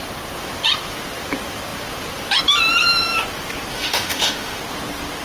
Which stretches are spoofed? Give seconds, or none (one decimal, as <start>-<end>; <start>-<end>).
3.7-4.6